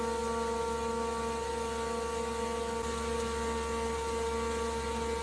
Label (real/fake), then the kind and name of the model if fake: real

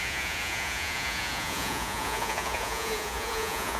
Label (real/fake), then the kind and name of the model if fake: fake, vocoder, Vocos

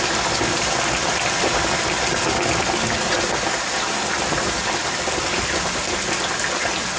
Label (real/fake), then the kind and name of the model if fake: real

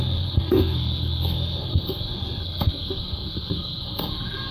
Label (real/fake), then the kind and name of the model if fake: fake, codec, SNAC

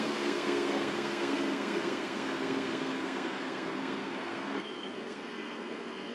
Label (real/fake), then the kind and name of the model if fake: fake, codec, SNAC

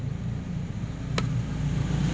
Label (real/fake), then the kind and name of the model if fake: real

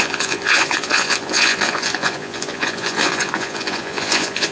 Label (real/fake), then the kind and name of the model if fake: fake, vocoder, Vocos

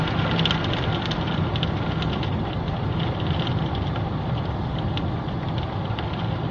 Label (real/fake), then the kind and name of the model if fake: real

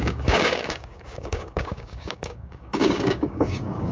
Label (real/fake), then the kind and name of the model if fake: fake, codec, DAC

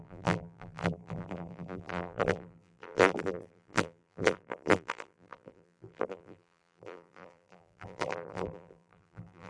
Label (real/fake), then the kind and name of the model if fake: fake, vocoder, BigVGAN v2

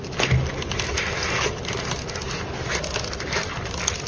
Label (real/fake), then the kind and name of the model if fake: real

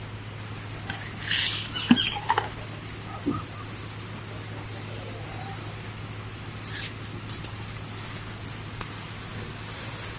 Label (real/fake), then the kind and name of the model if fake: real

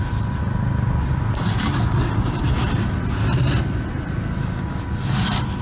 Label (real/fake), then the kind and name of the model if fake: real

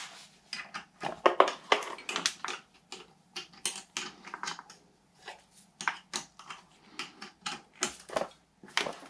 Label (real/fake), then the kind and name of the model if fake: real